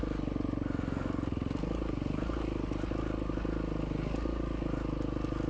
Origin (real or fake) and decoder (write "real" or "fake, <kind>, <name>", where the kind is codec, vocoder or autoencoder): real